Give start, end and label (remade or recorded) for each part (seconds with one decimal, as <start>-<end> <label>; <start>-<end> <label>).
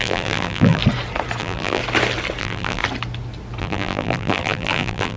0.0-0.8 remade; 0.8-1.4 recorded; 1.4-1.8 remade; 1.8-2.4 recorded; 2.4-2.8 remade; 2.8-3.6 recorded; 3.6-5.2 remade